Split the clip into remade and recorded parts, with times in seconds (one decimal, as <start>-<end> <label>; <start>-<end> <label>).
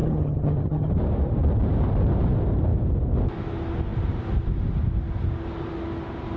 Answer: 0.0-0.9 remade; 0.9-6.4 recorded